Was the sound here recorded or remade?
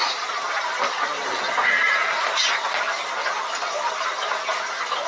recorded